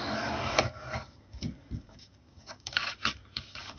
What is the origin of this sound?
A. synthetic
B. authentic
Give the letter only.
A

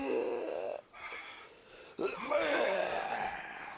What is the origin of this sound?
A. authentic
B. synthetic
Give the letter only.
A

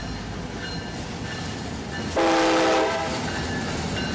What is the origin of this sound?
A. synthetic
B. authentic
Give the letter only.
B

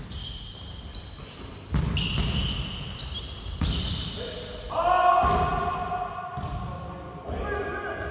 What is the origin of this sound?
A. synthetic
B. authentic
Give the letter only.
B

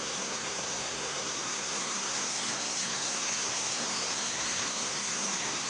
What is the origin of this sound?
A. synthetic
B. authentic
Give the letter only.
A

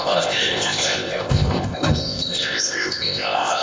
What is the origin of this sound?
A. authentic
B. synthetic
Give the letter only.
B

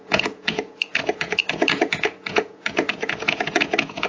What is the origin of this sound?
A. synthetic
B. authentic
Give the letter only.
A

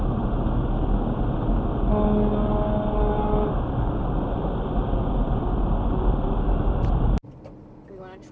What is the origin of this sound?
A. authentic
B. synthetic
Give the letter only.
A